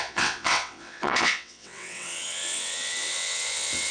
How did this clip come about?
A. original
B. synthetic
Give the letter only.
B